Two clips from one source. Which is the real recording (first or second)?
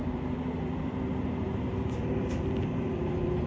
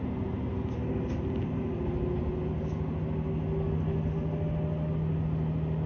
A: second